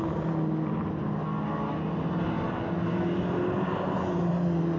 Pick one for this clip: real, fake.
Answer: real